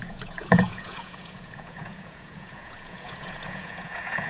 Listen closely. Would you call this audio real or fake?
fake